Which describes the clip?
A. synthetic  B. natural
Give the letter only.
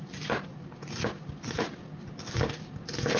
B